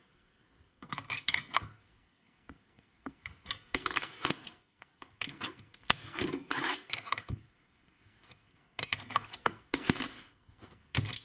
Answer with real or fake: fake